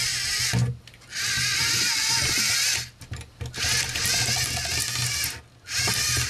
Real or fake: real